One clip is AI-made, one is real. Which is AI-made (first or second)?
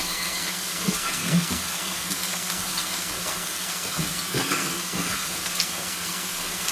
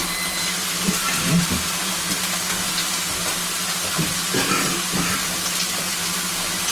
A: first